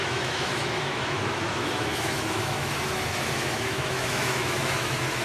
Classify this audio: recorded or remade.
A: remade